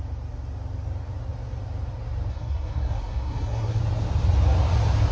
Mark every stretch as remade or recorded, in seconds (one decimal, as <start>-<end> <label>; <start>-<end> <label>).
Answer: 0.0-2.3 recorded; 2.3-3.8 remade; 3.8-5.1 recorded